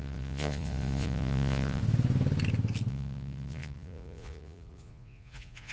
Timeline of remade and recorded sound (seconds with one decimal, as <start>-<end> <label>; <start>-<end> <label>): 0.0-1.8 remade; 1.8-2.9 recorded; 2.9-5.7 remade